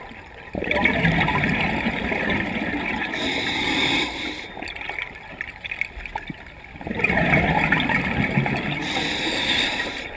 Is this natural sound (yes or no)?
yes